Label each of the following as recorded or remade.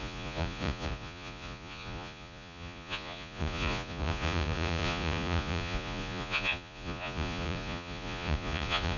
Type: remade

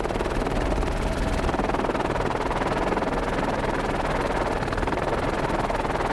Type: recorded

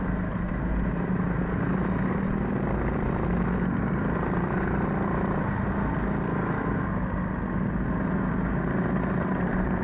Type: recorded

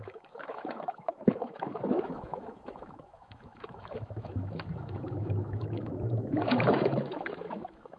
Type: remade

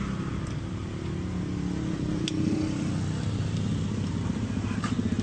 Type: recorded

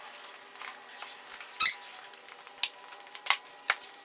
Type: recorded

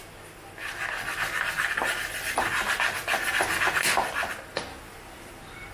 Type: recorded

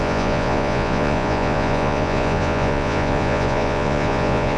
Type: remade